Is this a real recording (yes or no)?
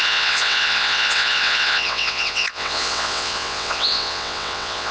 no